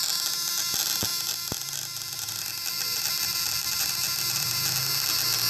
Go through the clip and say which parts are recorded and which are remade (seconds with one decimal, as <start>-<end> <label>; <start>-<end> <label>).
0.0-1.1 recorded; 1.1-4.4 remade; 4.4-5.5 recorded